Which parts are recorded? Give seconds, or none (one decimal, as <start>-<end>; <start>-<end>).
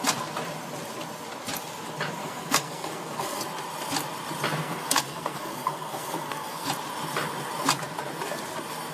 0.0-2.2; 3.4-4.6; 6.7-8.9